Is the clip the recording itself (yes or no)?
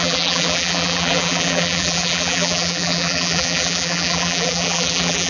no